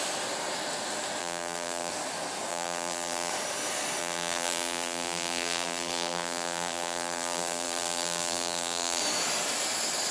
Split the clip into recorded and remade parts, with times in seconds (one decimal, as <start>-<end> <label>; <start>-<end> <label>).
0.0-1.2 recorded; 1.2-1.9 remade; 1.9-2.5 recorded; 2.5-3.3 remade; 3.3-4.0 recorded; 4.0-9.0 remade; 9.0-10.1 recorded